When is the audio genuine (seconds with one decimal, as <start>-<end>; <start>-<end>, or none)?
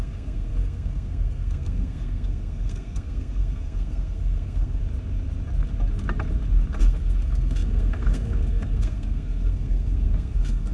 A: 4.8-6.8